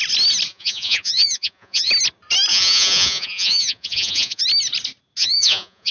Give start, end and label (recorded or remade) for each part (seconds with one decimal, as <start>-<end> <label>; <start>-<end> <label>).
0.0-0.5 recorded; 0.5-1.9 remade; 1.9-2.5 recorded; 2.5-4.4 remade; 4.4-5.2 recorded; 5.2-5.9 remade